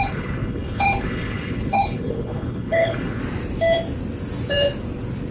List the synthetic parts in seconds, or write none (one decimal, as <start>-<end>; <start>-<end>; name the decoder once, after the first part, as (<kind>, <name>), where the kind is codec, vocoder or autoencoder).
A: 0.0-3.2 (codec, HILCodec)